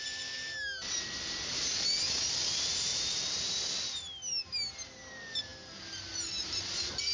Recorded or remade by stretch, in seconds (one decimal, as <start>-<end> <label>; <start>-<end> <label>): 0.0-7.1 recorded